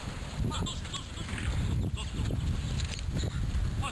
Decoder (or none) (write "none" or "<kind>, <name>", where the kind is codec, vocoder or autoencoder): none